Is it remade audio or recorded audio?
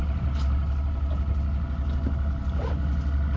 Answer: recorded